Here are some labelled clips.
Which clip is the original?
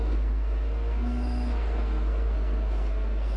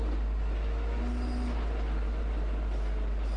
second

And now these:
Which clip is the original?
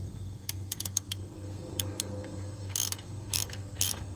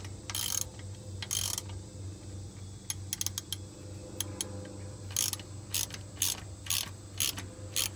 second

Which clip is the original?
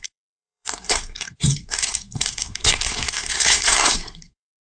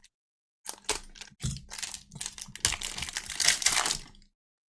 second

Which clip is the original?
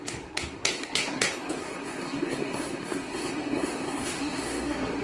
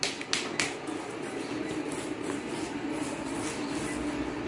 second